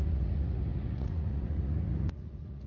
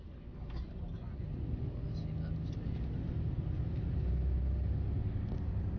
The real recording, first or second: second